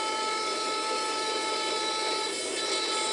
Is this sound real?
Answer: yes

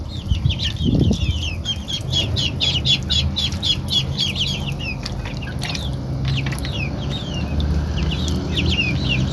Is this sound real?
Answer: yes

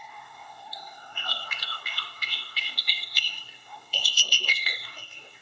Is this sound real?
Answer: no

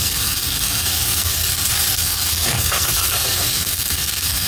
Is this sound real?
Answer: no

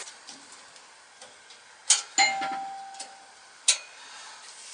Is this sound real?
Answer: yes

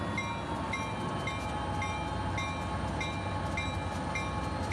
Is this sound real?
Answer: yes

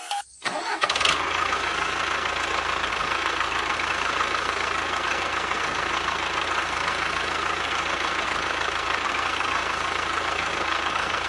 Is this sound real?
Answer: no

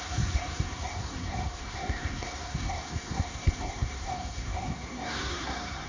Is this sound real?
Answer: no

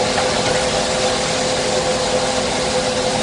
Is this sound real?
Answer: yes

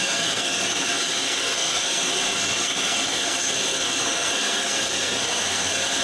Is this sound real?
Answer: no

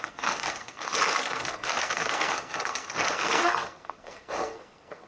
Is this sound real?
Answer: no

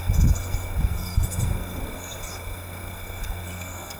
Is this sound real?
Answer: no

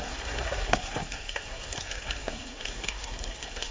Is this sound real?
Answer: no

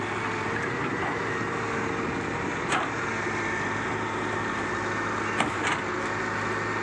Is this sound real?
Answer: yes